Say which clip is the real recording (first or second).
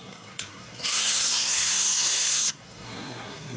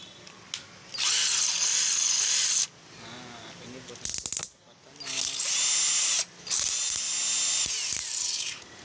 second